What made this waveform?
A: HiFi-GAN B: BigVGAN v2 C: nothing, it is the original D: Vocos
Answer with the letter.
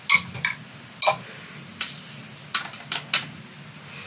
C